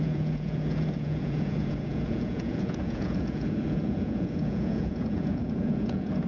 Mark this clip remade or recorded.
remade